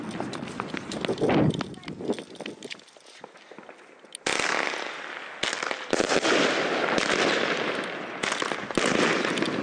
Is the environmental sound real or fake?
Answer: real